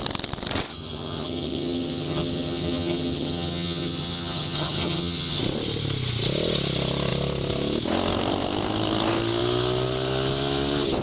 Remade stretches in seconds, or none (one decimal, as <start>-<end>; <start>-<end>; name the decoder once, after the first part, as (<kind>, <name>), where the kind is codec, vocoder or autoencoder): 0.7-5.4 (vocoder, HiFi-GAN)